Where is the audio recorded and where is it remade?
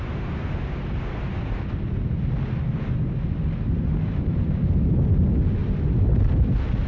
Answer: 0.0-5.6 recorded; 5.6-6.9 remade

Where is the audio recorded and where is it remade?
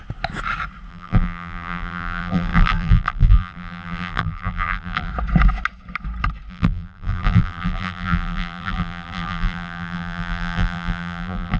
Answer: 0.0-0.9 recorded; 0.9-5.1 remade; 5.1-6.5 recorded; 6.5-11.6 remade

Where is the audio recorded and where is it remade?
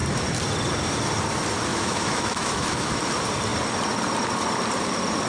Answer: 0.0-1.7 recorded; 1.7-3.0 remade; 3.0-5.3 recorded